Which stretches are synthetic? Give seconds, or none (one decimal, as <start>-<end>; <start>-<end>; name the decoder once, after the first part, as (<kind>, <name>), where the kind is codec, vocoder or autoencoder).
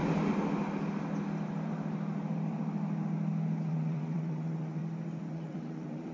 3.7-4.8 (vocoder, WaveNeXt); 5.3-6.1